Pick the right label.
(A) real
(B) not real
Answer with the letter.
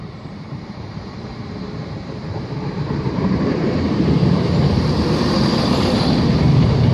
B